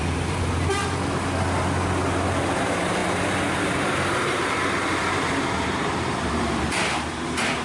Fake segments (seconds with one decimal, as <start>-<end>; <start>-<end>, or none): 0.0-0.8; 2.6-7.6